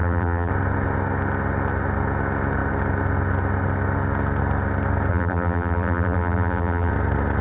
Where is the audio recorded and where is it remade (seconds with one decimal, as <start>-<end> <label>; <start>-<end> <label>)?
0.0-0.5 remade; 0.5-5.1 recorded; 5.1-6.9 remade; 6.9-7.4 recorded